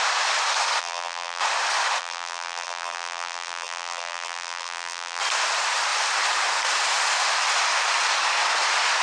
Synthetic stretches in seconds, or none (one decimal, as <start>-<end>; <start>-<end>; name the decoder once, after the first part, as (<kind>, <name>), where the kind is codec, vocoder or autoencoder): 0.8-1.4 (vocoder, BigVGAN v2); 2.0-5.2